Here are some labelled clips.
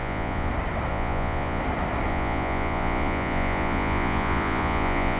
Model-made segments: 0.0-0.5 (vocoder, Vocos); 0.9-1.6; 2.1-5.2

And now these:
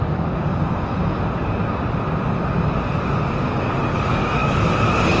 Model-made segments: 0.0-0.5 (codec, DAC); 3.6-5.2

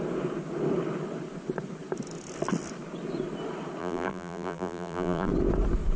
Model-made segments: 3.8-5.3 (vocoder, BigVGAN v2)

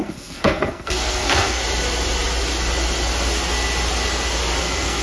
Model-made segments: 0.0-1.6 (codec, SNAC); 4.6-5.0